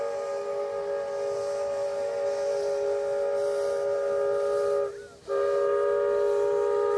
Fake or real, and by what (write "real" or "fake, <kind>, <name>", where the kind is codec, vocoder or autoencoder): real